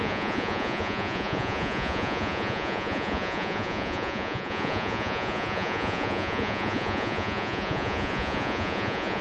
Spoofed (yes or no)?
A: yes